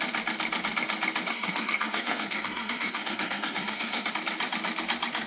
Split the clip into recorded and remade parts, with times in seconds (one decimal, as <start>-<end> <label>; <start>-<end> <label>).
0.0-1.3 recorded; 1.3-4.1 remade; 4.1-5.3 recorded